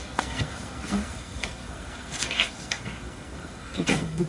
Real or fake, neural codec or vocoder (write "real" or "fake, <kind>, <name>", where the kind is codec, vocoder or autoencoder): fake, codec, SNAC